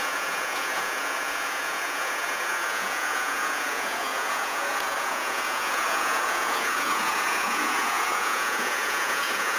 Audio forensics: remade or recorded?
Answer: remade